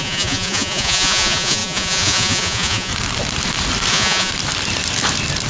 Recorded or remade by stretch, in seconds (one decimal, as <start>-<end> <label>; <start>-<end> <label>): 0.0-2.9 remade; 2.9-3.9 recorded; 3.9-4.3 remade; 4.3-5.5 recorded